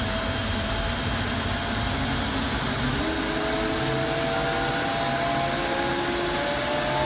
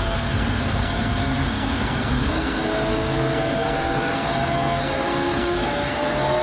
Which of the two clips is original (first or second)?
first